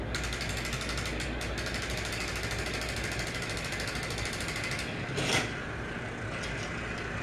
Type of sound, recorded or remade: recorded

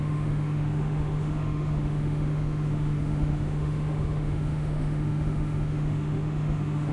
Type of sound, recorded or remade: remade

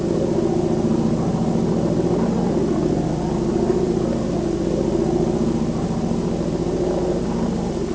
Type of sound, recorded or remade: recorded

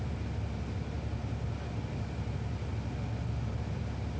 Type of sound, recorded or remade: recorded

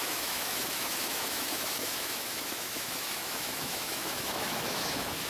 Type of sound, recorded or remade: remade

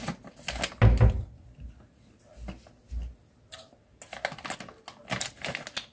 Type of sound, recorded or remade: recorded